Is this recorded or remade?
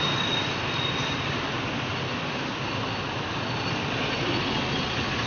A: recorded